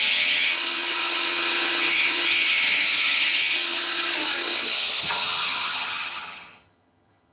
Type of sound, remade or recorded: remade